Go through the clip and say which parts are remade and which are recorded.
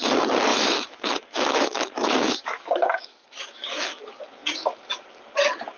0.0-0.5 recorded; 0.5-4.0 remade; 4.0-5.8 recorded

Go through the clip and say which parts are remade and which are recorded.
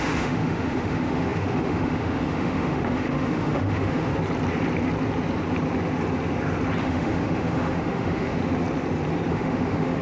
0.0-4.1 remade; 4.1-6.8 recorded; 6.8-8.4 remade; 8.4-9.3 recorded; 9.3-10.0 remade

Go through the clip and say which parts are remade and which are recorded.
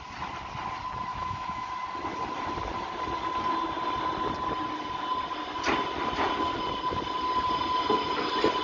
0.0-1.1 recorded; 1.1-1.7 remade; 1.7-8.6 recorded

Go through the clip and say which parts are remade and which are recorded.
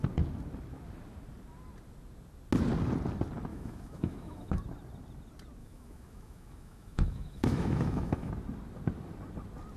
0.0-3.5 recorded; 3.5-4.6 remade; 4.6-5.6 recorded; 5.6-8.3 remade; 8.3-9.8 recorded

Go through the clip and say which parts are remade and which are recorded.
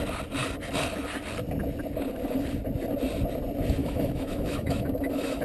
0.0-3.8 recorded; 3.8-5.4 remade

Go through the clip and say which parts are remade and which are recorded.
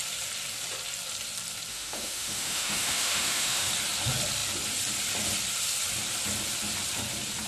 0.0-1.7 recorded; 1.7-3.7 remade; 3.7-7.5 recorded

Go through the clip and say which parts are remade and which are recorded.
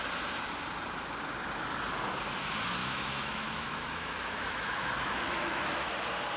0.0-2.8 recorded; 2.8-5.9 remade; 5.9-6.4 recorded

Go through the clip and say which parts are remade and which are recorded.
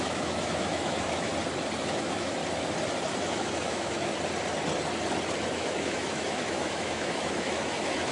0.0-1.3 remade; 1.3-1.8 recorded; 1.8-2.4 remade; 2.4-3.3 recorded; 3.3-4.1 remade; 4.1-5.5 recorded; 5.5-8.1 remade